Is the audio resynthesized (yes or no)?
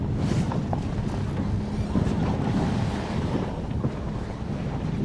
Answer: no